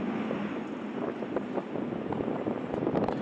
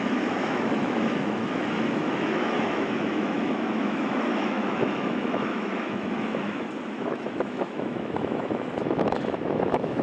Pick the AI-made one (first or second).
second